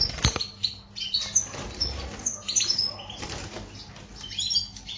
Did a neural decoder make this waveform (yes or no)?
no